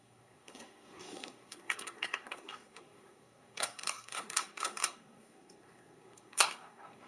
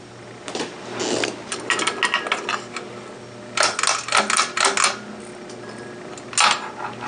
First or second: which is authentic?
second